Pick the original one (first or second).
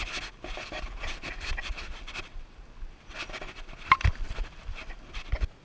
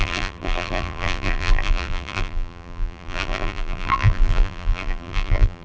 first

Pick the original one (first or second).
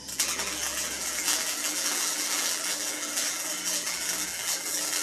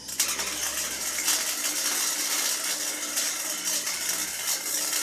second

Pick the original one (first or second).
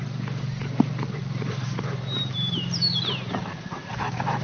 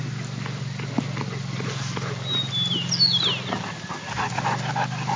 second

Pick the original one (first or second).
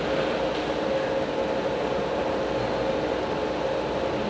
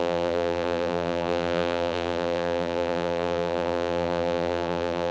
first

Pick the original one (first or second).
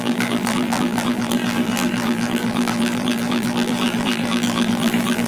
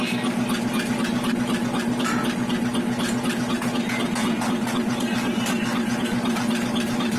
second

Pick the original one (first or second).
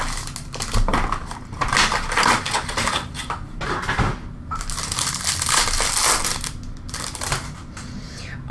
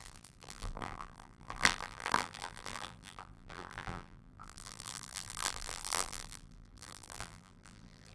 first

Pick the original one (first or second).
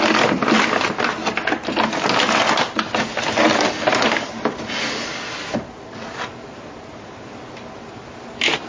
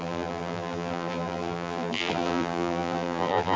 first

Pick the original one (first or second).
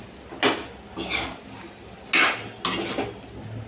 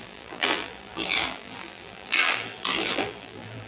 first